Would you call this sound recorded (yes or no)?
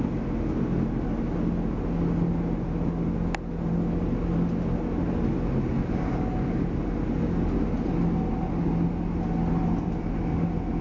yes